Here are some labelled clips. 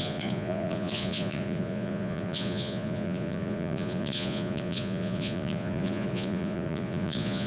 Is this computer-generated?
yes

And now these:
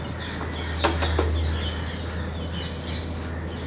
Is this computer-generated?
no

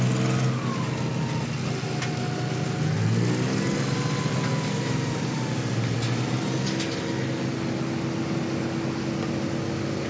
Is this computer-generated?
no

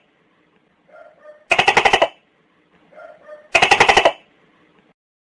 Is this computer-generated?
no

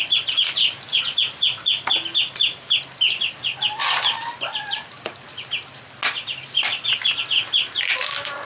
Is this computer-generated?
no